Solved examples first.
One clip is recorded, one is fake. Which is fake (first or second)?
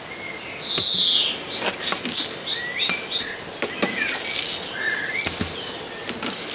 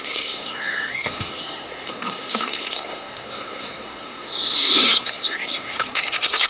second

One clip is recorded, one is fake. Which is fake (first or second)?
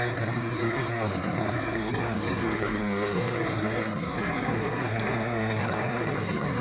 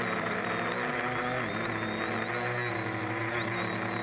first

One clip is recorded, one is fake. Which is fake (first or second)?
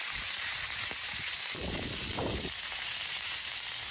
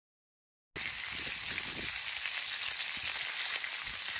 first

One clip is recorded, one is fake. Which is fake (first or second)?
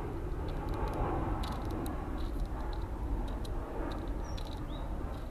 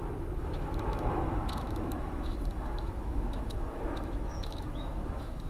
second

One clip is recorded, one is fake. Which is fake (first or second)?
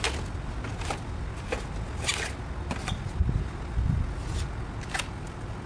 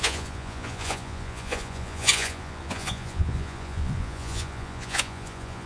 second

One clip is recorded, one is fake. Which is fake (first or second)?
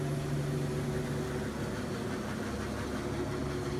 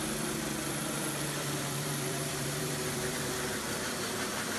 second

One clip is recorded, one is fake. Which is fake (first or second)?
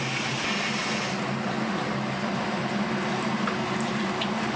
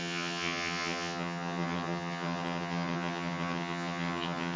second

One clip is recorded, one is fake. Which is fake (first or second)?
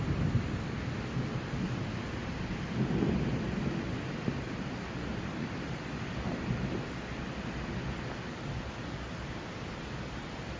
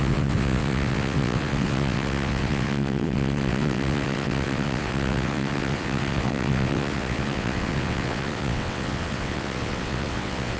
second